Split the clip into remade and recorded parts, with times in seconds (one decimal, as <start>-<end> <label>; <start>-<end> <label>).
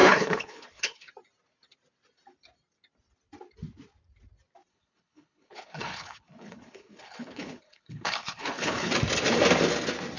0.0-1.1 remade; 1.1-4.7 recorded; 4.7-8.9 remade; 8.9-10.2 recorded